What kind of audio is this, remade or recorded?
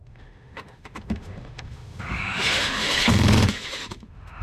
remade